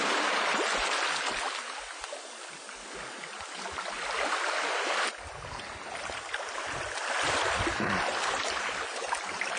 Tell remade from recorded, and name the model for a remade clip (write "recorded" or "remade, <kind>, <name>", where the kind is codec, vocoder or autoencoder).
recorded